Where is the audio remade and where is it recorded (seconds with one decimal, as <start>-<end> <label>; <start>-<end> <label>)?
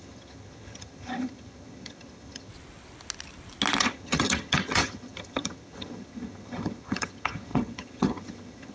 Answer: 0.0-2.5 remade; 2.5-3.8 recorded; 3.8-8.7 remade